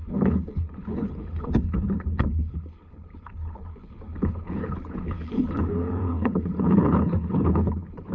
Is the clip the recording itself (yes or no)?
no